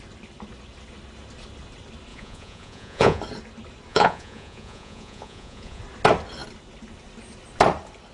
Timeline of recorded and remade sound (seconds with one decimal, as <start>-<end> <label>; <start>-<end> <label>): 0.0-2.1 recorded; 2.1-3.2 remade; 3.2-3.9 recorded; 3.9-5.8 remade; 5.8-8.1 recorded